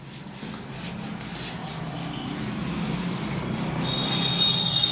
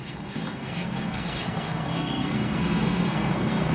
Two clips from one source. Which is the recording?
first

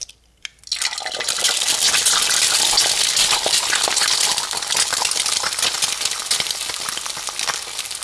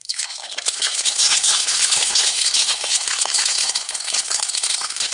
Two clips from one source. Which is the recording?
first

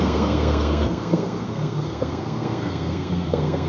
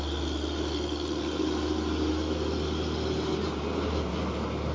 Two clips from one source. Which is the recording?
second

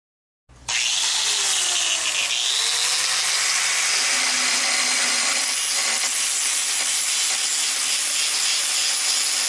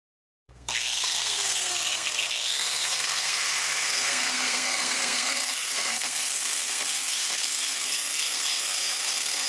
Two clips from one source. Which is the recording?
first